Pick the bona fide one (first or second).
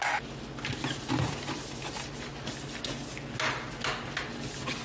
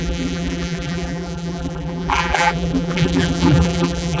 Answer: first